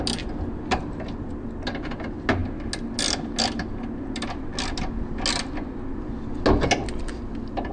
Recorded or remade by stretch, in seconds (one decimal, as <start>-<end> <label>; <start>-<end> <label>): 0.0-7.7 recorded